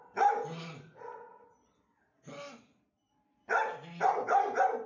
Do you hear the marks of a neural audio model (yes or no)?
no